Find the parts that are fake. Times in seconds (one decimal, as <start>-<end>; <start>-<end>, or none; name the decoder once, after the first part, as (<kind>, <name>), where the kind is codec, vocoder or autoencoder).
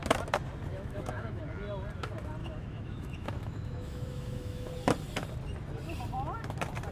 0.7-1.4 (autoencoder, DAC-VAE); 2.4-4.7